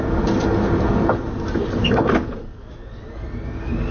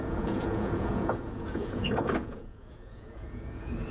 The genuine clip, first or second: first